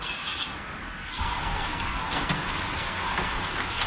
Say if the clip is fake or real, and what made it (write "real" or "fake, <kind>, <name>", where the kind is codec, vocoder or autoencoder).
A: fake, codec, SNAC